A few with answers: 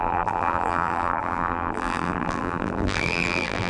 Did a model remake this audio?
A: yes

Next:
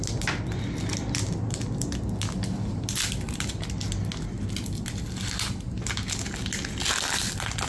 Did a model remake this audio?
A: no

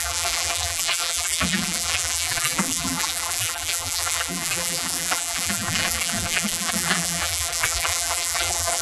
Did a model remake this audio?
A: yes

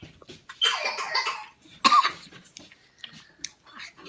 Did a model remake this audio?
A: no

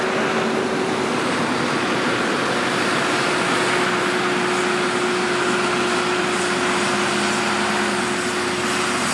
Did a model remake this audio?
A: no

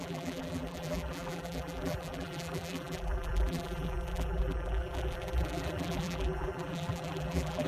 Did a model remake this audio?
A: yes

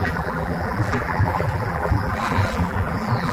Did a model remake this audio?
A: yes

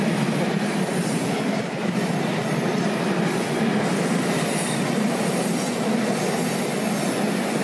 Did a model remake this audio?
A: no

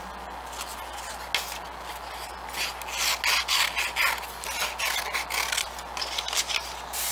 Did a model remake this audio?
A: no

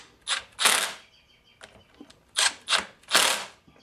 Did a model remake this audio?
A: no